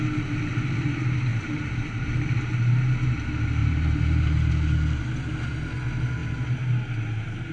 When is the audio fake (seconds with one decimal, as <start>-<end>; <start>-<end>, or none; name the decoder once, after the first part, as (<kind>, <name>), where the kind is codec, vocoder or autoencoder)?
1.3-2.7 (vocoder, BigVGAN v2); 3.6-4.5